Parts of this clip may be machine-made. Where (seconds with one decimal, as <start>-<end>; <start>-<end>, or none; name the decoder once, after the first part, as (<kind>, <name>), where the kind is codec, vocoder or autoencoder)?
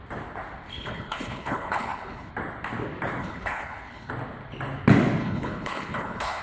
0.7-2.3 (codec, HILCodec); 3.2-4.1; 5.2-6.4